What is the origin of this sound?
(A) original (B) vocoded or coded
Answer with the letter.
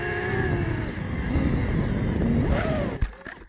A